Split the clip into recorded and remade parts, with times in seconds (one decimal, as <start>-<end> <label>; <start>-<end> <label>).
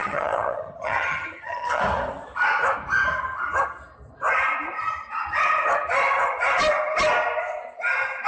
0.0-1.8 remade; 1.8-8.3 recorded